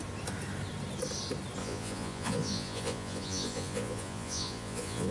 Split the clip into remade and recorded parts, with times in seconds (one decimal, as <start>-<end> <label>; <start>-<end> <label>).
0.0-1.6 recorded; 1.6-5.1 remade